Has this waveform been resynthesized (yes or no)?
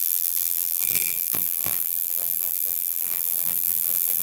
yes